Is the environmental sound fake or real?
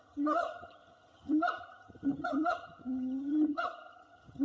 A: fake